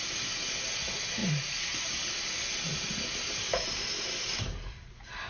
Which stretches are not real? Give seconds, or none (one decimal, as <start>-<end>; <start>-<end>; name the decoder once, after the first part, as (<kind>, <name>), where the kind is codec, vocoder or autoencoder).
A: none